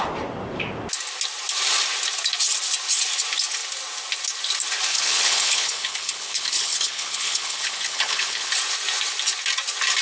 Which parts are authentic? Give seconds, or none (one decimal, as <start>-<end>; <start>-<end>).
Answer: 0.0-4.9; 8.5-10.0